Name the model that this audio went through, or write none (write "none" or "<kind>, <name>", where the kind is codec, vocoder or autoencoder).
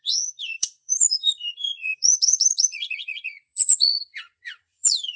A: vocoder, Vocos